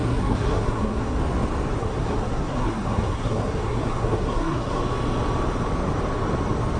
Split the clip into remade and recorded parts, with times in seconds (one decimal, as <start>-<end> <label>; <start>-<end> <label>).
0.0-1.2 remade; 1.2-1.8 recorded; 1.8-4.8 remade; 4.8-6.8 recorded